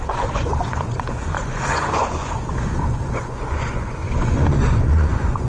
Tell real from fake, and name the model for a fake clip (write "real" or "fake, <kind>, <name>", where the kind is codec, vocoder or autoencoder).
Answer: fake, vocoder, Vocos